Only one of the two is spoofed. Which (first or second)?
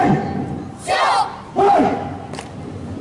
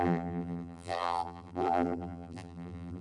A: second